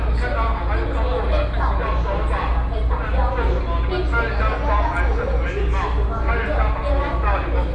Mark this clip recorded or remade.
recorded